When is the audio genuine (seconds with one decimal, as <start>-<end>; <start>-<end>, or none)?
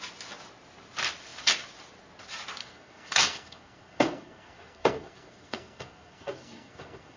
0.0-2.6